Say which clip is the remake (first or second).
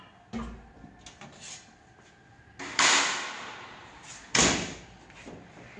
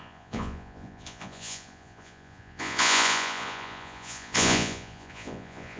second